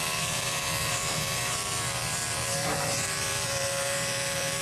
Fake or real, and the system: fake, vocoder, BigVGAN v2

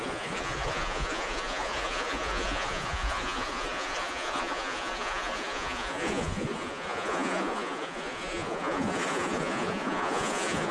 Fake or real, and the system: fake, vocoder, Vocos